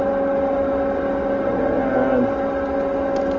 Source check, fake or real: real